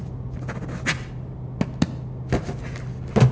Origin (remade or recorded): recorded